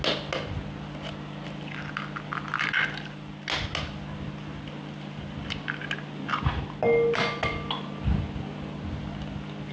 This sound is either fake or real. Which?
real